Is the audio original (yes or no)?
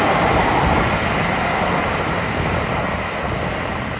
yes